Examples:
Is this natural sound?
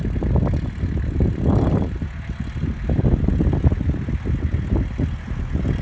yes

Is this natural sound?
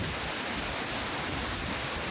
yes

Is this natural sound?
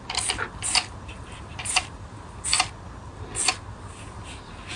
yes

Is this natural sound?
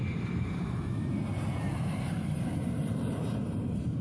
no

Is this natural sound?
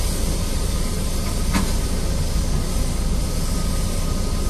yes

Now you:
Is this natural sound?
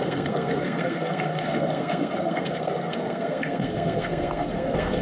no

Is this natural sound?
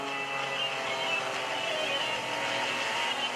yes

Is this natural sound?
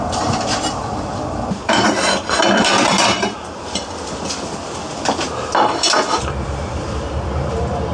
no